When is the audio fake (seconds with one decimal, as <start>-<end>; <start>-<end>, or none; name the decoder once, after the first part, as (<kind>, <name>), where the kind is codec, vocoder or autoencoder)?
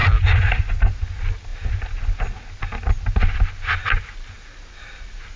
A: none